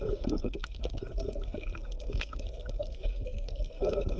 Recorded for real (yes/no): no